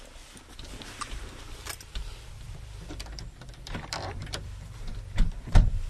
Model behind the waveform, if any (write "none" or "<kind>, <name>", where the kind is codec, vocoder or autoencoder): vocoder, BigVGAN v2